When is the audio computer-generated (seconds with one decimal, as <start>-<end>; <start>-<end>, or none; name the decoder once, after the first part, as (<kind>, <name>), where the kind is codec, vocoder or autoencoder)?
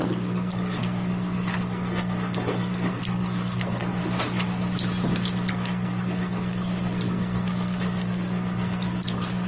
0.0-4.0 (codec, SNAC); 5.5-9.5